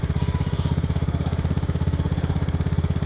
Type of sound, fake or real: fake